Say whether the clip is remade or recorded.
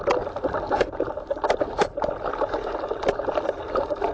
recorded